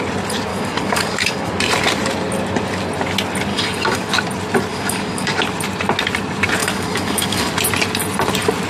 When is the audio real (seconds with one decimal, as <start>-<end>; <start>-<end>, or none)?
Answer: 0.0-0.5; 1.5-3.5; 4.1-4.7; 5.4-6.6; 7.5-8.7